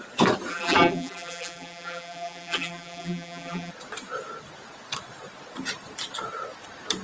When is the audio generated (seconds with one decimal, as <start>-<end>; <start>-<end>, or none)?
0.5-3.7